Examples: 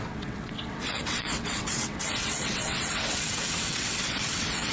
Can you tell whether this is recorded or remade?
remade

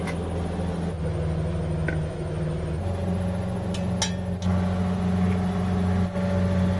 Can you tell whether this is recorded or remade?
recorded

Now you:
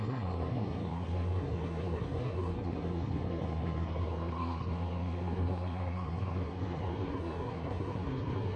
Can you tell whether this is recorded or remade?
remade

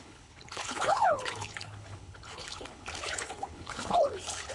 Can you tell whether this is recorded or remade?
remade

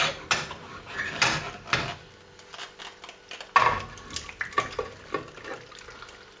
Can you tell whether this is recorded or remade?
recorded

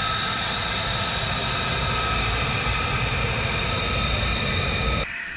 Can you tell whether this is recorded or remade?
recorded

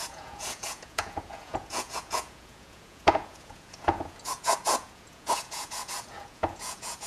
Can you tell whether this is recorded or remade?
remade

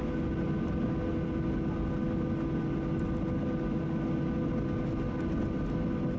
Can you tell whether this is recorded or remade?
recorded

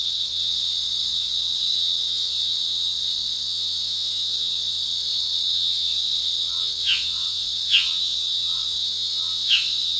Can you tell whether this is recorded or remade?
remade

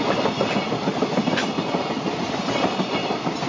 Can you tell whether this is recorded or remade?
recorded